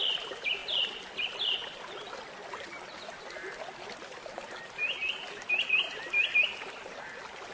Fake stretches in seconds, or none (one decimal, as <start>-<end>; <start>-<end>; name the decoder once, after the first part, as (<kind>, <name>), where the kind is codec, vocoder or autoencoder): none